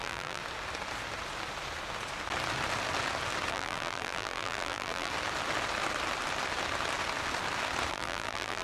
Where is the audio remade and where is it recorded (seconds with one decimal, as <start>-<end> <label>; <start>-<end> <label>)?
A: 0.0-0.4 remade; 0.4-3.5 recorded; 3.5-5.1 remade; 5.1-7.9 recorded; 7.9-8.6 remade